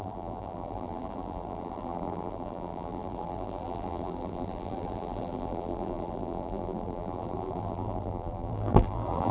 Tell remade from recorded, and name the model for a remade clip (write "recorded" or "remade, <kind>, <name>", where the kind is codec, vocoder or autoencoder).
remade, vocoder, BigVGAN v2